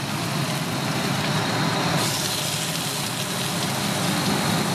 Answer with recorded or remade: recorded